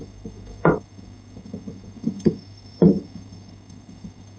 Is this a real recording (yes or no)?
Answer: no